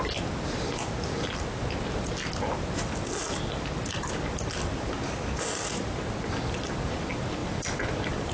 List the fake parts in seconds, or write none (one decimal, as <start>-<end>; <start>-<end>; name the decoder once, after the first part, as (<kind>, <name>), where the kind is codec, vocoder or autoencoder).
7.4-8.3 (vocoder, BigVGAN v2)